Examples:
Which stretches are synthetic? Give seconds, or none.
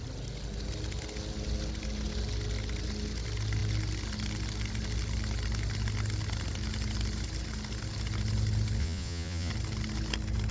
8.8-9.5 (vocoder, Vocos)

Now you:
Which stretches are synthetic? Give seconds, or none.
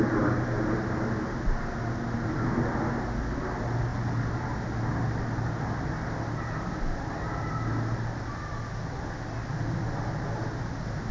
none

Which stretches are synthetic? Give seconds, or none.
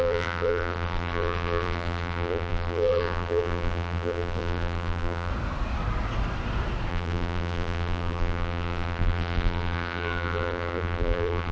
0.0-5.3 (vocoder, BigVGAN v2); 6.9-11.5